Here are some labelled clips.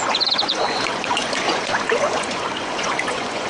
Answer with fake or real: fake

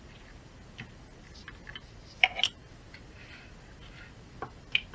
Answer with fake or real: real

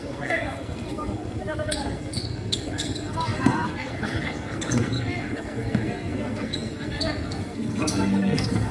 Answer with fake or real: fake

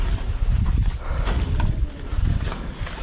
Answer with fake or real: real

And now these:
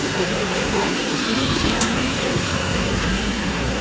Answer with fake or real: fake